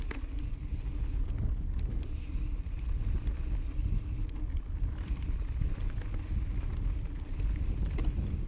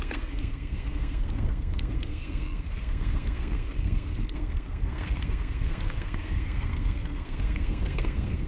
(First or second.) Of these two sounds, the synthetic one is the second